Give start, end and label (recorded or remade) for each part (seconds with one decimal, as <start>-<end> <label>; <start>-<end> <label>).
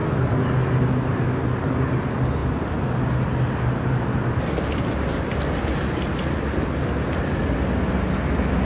0.0-8.6 recorded